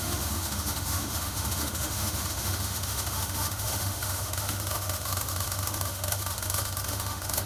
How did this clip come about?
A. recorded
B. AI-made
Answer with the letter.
B